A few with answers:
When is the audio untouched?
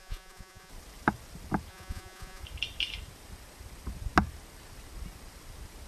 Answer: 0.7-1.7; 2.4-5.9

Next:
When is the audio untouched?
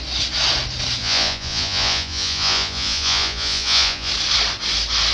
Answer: 0.0-1.0; 4.1-5.1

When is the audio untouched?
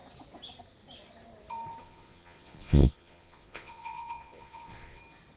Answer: 0.0-1.8; 5.0-5.4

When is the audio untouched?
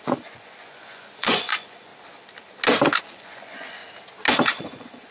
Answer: 1.9-3.0; 3.8-4.3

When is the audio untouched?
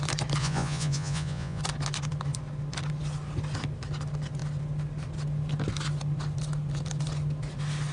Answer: 0.0-0.4; 1.6-7.9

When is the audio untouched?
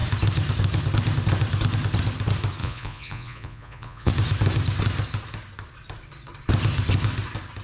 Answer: 0.0-2.6; 4.1-7.6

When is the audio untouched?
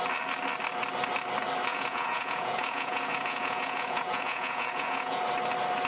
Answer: 0.0-1.7; 5.2-5.9